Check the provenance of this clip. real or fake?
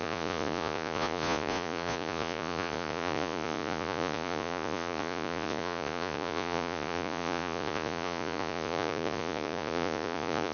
fake